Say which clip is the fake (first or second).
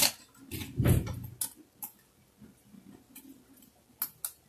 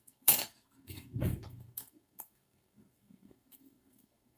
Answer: second